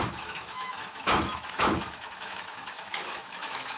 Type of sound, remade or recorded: remade